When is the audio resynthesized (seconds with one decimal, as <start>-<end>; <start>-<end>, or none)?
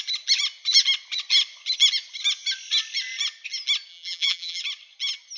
3.9-4.6